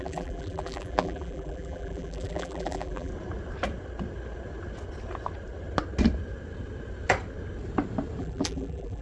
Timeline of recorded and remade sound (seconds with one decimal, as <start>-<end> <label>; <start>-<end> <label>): 0.0-3.1 remade; 3.1-8.2 recorded; 8.2-9.0 remade